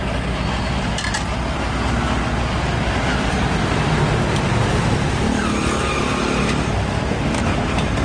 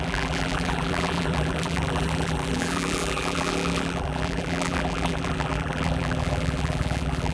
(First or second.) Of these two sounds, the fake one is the second